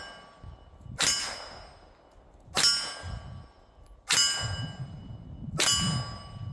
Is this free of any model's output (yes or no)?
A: yes